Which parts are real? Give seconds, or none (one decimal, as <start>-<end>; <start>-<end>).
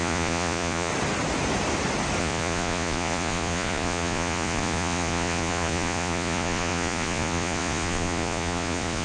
0.9-2.2